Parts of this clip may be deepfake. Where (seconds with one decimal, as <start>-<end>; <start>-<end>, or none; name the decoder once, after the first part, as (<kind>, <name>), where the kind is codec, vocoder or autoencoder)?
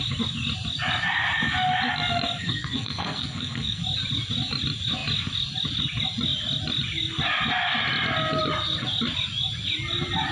2.4-3.8 (codec, SNAC)